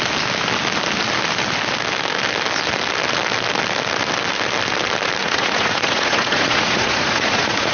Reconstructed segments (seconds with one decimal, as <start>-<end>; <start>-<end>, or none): 5.2-7.7